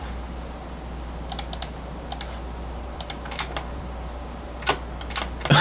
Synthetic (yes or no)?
no